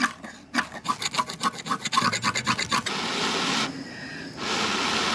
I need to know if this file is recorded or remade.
recorded